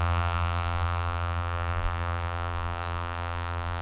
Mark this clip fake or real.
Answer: fake